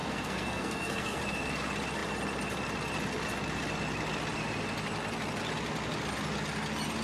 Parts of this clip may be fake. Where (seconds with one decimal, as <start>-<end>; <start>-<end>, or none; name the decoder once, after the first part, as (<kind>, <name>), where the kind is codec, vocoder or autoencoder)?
0.0-1.2 (codec, SNAC)